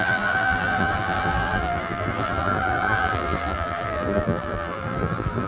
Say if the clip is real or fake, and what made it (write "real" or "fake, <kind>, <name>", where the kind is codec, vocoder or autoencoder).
fake, vocoder, BigVGAN v2